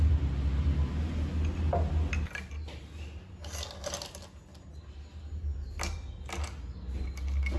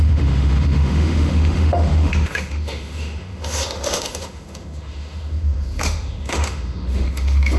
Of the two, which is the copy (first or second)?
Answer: second